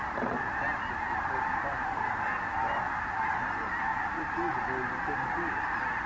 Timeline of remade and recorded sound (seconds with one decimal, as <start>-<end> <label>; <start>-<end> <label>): 0.0-6.1 recorded